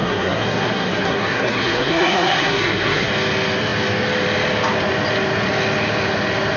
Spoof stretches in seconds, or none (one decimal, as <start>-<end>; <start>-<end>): 0.0-3.1